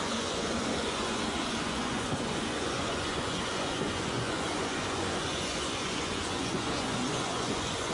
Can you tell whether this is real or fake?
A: fake